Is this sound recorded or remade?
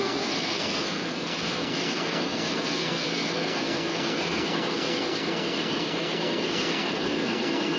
remade